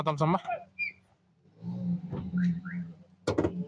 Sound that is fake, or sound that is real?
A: real